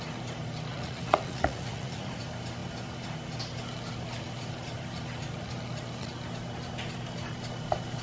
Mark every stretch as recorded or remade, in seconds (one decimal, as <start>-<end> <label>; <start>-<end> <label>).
0.0-0.7 recorded; 0.7-2.2 remade; 2.2-8.0 recorded